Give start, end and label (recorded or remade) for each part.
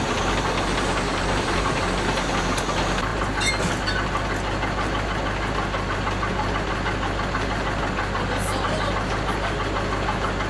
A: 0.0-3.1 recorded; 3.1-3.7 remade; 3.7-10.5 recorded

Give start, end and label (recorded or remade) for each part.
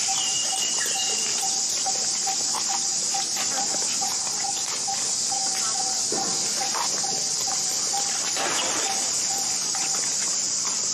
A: 0.0-1.3 remade; 1.3-1.9 recorded; 1.9-2.9 remade; 2.9-7.0 recorded; 7.0-9.6 remade; 9.6-10.3 recorded; 10.3-10.9 remade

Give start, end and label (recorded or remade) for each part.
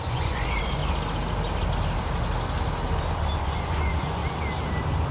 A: 0.0-0.8 remade; 0.8-3.4 recorded; 3.4-4.2 remade; 4.2-5.1 recorded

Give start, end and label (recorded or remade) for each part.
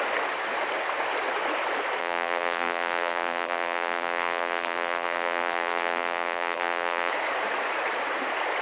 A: 0.0-2.0 recorded; 2.0-7.1 remade; 7.1-8.6 recorded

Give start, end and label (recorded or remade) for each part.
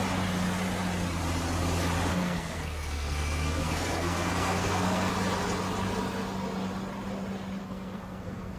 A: 0.0-2.1 recorded; 2.1-5.1 remade; 5.1-7.6 recorded; 7.6-8.6 remade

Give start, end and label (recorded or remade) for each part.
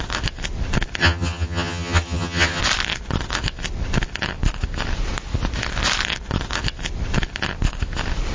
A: 0.0-1.0 recorded; 1.0-2.6 remade; 2.6-8.3 recorded